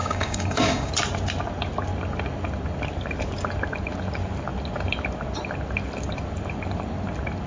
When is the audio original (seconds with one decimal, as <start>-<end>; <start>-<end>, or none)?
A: 0.9-7.5